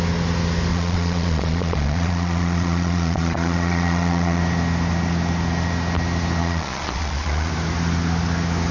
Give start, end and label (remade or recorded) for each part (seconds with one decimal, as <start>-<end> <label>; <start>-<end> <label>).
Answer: 0.0-0.7 recorded; 0.7-4.4 remade; 4.4-6.4 recorded; 6.4-7.5 remade; 7.5-8.7 recorded